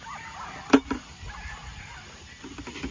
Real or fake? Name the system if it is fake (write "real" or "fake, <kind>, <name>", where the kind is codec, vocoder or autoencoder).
real